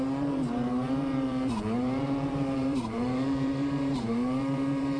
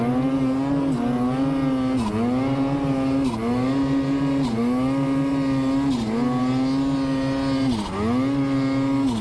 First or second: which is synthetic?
first